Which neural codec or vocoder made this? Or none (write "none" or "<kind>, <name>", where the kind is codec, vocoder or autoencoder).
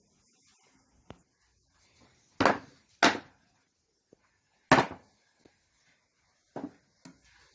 none